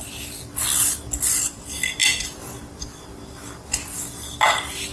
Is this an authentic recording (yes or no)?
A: yes